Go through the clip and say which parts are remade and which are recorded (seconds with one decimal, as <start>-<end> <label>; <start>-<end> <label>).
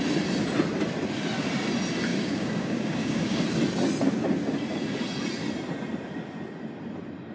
0.0-2.1 recorded; 2.1-3.4 remade; 3.4-7.3 recorded